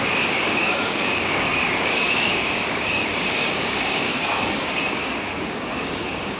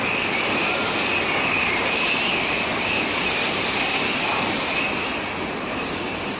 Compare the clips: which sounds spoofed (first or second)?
first